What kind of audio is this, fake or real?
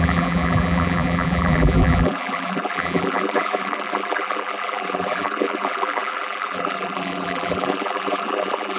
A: fake